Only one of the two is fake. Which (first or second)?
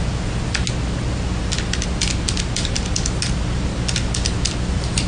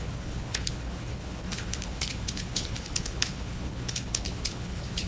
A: second